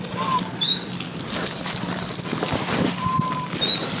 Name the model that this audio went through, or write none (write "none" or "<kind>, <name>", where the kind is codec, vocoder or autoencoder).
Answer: none